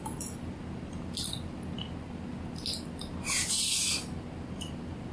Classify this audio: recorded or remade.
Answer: recorded